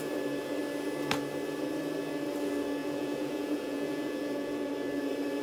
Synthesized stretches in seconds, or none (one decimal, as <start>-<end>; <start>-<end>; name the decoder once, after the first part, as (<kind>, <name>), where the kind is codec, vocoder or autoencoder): 2.8-4.7 (vocoder, Vocos)